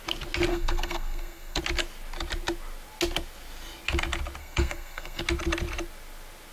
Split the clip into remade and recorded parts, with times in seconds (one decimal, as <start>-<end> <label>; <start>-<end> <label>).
0.0-0.5 recorded; 0.5-1.6 remade; 1.6-4.4 recorded; 4.4-5.2 remade; 5.2-6.5 recorded